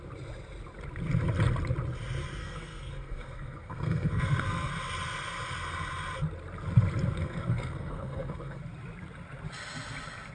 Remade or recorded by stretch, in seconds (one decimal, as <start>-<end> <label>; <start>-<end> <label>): 0.0-2.4 recorded; 2.4-4.7 remade; 4.7-7.2 recorded; 7.2-8.6 remade; 8.6-10.3 recorded

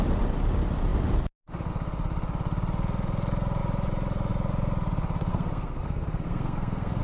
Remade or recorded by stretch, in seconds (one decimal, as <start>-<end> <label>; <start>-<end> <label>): 0.0-5.3 recorded; 5.3-7.0 remade